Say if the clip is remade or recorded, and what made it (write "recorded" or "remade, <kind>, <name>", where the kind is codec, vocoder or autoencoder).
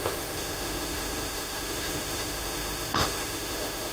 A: remade, autoencoder, DAC-VAE